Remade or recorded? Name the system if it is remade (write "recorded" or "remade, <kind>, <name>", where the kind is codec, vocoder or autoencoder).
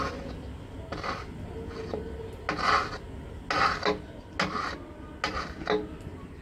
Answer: recorded